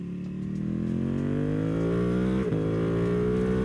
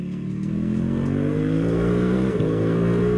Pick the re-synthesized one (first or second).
second